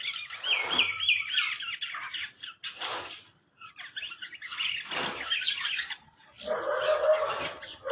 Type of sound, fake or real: fake